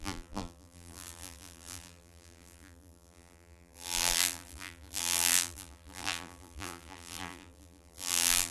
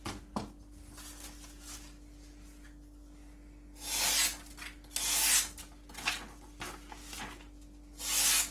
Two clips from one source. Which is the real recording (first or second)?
second